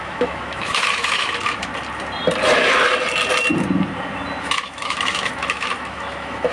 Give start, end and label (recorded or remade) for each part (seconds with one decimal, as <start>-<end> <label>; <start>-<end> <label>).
0.0-1.7 remade; 1.7-4.4 recorded; 4.4-6.5 remade